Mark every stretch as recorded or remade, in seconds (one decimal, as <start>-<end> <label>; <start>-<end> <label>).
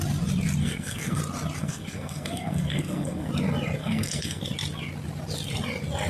0.0-0.6 recorded; 0.6-1.2 remade; 1.2-1.6 recorded; 1.6-3.3 remade; 3.3-3.8 recorded; 3.8-4.4 remade; 4.4-6.1 recorded